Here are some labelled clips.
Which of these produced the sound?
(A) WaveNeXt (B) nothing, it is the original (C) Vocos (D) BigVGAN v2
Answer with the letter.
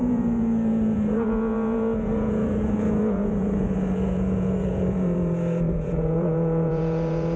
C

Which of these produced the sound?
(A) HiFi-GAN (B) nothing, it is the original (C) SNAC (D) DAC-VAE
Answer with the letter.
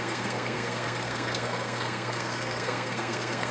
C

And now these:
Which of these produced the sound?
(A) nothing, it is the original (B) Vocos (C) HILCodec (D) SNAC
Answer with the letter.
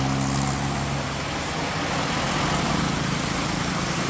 A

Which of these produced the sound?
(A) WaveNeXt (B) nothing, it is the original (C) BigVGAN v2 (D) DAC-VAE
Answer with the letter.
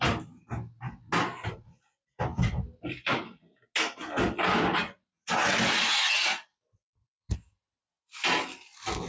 B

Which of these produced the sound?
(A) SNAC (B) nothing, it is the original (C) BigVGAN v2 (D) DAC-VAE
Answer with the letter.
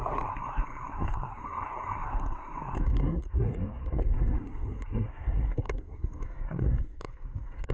A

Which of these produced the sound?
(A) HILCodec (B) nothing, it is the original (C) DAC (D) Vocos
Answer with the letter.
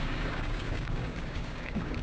C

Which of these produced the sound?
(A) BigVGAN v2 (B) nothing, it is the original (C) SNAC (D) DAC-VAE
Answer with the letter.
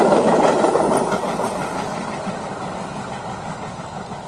B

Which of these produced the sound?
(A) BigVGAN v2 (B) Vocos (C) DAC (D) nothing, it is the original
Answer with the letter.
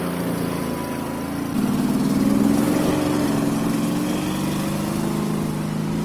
D